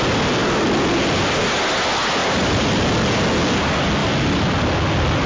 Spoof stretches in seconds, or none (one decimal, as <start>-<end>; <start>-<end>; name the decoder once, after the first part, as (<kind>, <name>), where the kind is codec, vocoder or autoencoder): 0.4-1.1 (vocoder, BigVGAN v2); 2.2-2.8; 4.0-5.3